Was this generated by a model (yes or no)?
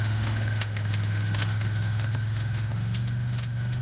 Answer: yes